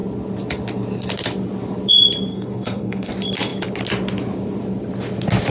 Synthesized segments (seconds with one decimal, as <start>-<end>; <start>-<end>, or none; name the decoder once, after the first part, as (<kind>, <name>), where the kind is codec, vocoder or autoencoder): 2.3-3.1 (codec, SNAC)